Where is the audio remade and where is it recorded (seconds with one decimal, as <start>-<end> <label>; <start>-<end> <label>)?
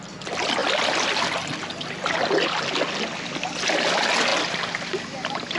0.0-5.6 recorded